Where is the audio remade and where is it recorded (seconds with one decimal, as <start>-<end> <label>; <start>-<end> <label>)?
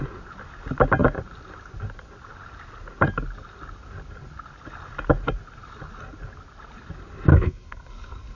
0.0-7.3 recorded; 7.3-8.4 remade